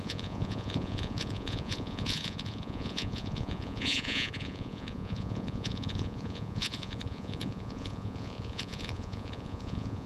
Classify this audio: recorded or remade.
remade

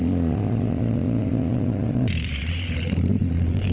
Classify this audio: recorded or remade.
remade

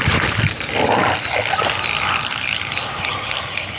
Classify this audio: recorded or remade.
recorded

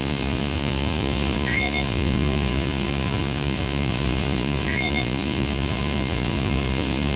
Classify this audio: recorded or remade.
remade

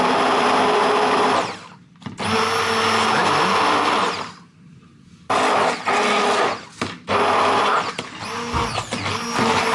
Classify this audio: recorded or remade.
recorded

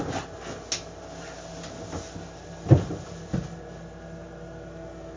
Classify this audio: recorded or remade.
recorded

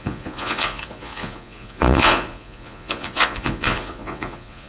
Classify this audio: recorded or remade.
remade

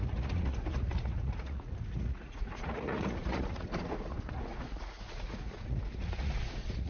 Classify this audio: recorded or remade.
remade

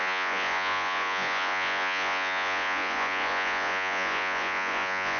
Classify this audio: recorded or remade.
remade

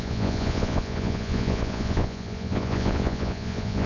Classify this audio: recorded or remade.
remade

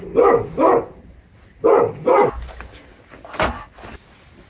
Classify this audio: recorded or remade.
recorded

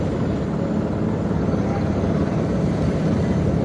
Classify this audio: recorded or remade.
recorded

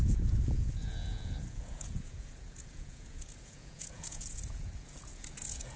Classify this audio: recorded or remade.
remade